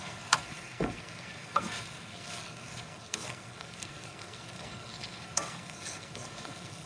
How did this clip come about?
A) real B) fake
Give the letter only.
B